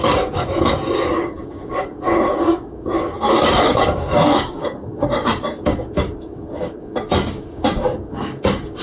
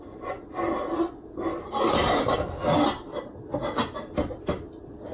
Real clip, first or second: second